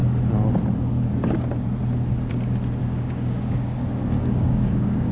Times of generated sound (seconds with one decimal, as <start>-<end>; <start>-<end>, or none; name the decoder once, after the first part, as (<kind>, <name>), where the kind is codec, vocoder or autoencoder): 2.8-5.1 (codec, DAC)